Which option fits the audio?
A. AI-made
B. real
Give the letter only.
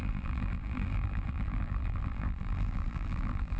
A